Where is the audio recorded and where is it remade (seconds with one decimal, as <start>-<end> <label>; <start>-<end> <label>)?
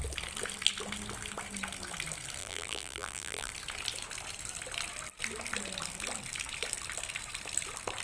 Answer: 0.0-2.4 recorded; 2.4-3.5 remade; 3.5-8.0 recorded